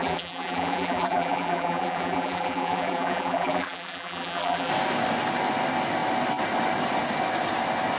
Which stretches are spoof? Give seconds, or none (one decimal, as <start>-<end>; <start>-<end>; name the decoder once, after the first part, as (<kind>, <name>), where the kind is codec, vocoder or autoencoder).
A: 0.0-4.7 (vocoder, BigVGAN v2)